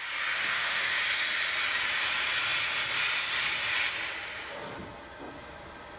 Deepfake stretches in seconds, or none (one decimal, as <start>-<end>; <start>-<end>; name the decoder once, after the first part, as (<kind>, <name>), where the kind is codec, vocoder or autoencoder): 0.4-0.9 (autoencoder, DAC-VAE)